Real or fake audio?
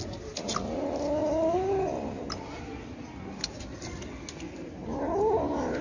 real